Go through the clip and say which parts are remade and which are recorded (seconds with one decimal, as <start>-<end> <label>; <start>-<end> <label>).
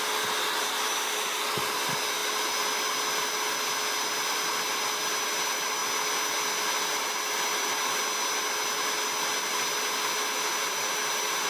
0.0-11.5 recorded